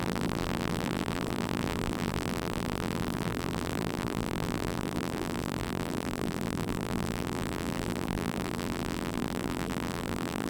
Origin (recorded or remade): remade